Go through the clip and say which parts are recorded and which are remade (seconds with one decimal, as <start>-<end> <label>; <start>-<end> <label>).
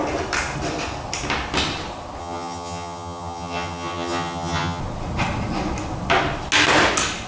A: 0.0-2.2 recorded; 2.2-4.8 remade; 4.8-7.3 recorded